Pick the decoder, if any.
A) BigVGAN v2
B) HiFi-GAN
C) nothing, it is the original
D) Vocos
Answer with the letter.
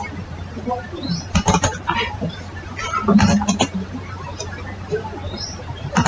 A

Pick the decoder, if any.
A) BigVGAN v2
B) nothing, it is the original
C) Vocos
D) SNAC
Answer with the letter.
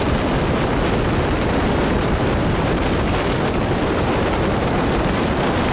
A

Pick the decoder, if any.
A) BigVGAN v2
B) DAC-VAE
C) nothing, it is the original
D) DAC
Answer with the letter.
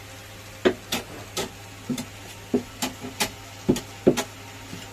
C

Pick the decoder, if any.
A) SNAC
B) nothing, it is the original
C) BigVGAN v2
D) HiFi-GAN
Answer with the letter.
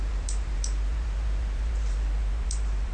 C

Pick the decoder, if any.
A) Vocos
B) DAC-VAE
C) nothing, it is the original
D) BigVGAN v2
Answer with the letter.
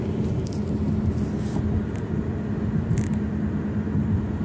C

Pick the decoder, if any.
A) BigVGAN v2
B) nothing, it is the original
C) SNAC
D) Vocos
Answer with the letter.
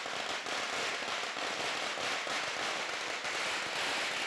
B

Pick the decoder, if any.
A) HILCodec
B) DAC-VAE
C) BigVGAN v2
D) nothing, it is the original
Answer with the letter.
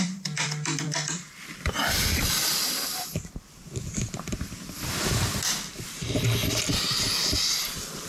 C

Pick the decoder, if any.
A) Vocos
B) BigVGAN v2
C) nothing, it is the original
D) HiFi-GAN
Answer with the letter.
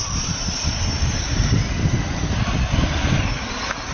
C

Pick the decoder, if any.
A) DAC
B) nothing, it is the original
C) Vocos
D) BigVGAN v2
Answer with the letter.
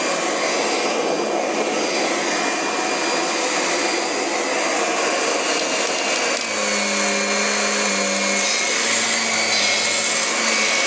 B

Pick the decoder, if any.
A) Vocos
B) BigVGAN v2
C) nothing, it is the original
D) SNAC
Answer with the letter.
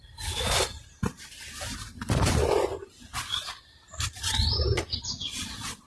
B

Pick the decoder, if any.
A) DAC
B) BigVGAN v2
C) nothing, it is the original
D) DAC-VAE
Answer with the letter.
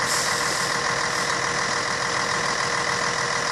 C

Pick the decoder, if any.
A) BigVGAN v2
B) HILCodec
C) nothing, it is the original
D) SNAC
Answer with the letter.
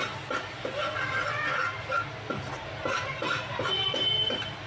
C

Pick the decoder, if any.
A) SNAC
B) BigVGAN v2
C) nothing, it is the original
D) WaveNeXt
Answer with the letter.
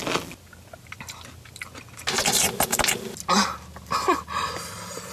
C